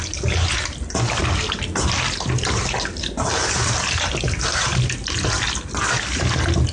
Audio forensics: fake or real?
real